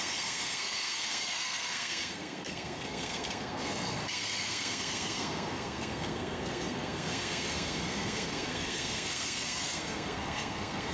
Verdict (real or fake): fake